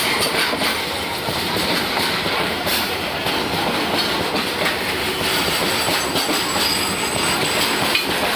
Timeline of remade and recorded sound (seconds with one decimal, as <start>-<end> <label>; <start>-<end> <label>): 0.0-1.3 recorded; 1.3-2.8 remade; 2.8-8.4 recorded